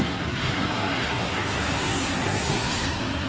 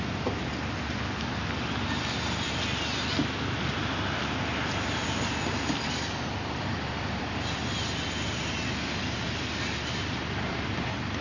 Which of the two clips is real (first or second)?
second